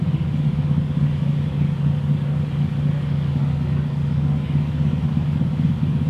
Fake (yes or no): yes